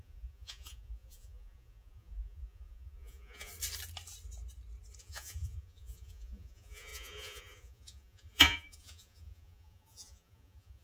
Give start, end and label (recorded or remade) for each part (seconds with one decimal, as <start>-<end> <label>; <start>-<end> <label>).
0.0-3.5 remade; 3.5-5.0 recorded; 5.0-10.8 remade